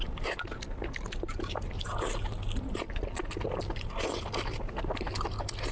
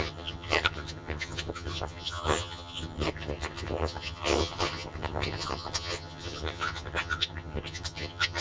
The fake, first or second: second